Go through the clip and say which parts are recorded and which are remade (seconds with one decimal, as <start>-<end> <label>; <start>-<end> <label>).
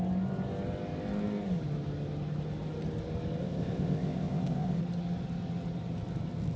0.0-3.4 recorded; 3.4-4.8 remade; 4.8-6.6 recorded